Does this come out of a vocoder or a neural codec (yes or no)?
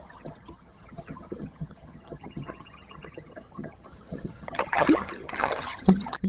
yes